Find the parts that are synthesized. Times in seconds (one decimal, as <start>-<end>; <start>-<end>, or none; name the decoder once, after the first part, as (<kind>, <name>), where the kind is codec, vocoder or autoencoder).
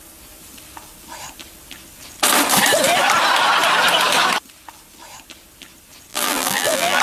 6.1-7.0 (vocoder, BigVGAN v2)